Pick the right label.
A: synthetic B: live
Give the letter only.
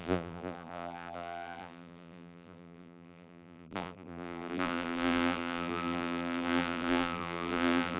A